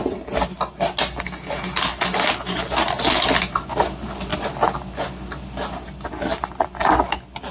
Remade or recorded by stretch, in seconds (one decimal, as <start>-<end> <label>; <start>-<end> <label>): 0.0-7.5 recorded